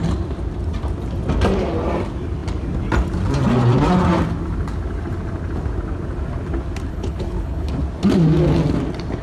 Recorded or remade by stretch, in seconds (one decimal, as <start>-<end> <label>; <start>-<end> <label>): 0.0-6.9 recorded; 6.9-7.7 remade; 7.7-9.2 recorded